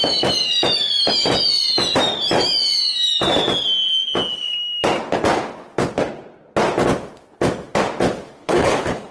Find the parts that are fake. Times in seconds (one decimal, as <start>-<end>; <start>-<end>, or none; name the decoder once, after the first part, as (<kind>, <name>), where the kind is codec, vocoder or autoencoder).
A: 8.4-9.1 (codec, HILCodec)